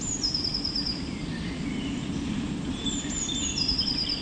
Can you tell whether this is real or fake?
fake